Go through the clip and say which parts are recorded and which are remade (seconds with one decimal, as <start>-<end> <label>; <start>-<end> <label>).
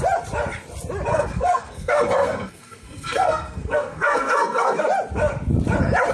0.0-1.1 recorded; 1.1-4.8 remade; 4.8-6.1 recorded